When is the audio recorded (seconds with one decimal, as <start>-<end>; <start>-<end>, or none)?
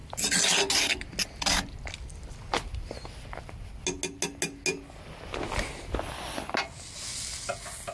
0.0-7.9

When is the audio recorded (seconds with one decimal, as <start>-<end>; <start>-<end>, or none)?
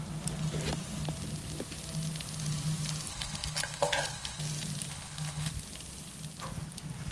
0.0-3.1; 4.4-4.9; 5.5-7.1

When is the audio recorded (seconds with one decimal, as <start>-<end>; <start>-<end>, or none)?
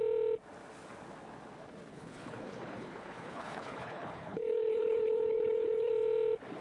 0.0-1.9; 5.9-6.6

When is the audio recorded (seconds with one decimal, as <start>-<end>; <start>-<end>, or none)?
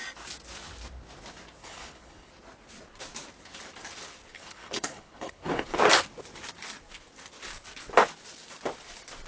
0.0-1.6; 2.3-4.3; 5.8-9.3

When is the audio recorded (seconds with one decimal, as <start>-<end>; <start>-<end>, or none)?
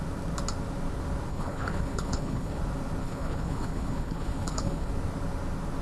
0.0-1.3; 2.6-3.0; 4.9-5.8